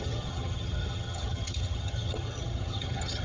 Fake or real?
fake